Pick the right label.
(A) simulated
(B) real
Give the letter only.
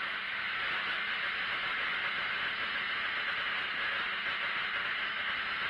B